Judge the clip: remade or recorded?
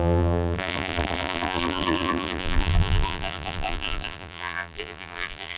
remade